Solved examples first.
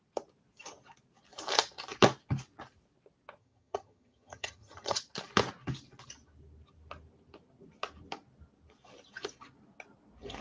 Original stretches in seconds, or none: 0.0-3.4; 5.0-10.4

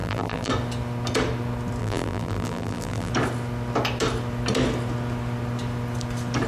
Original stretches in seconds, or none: 0.5-1.8; 3.1-6.5

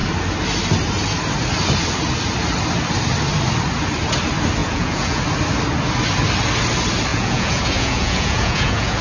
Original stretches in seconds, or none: 0.0-4.6; 5.2-7.1

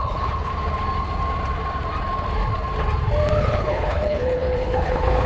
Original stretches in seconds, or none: 0.5-3.4

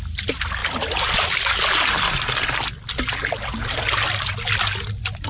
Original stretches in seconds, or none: 0.0-5.3

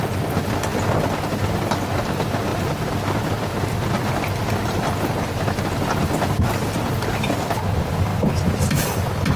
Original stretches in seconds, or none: 0.0-9.4